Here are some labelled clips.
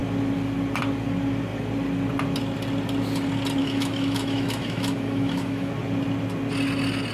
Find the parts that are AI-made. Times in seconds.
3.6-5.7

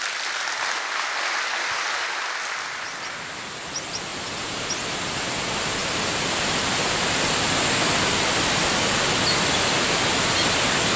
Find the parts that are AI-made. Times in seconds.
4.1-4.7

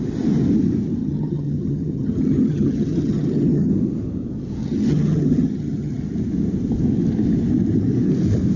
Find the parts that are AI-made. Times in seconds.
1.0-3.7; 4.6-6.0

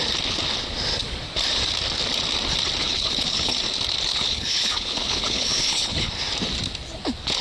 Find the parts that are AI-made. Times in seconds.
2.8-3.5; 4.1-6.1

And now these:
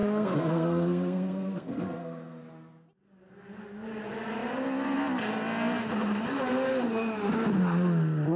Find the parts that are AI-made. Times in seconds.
0.0-2.4

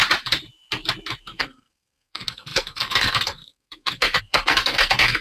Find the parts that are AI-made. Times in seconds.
1.2-5.2

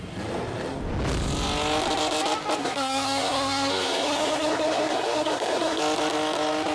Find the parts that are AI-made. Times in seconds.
2.6-5.8

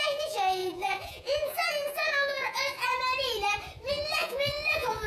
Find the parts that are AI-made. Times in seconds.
0.0-2.9; 3.9-5.1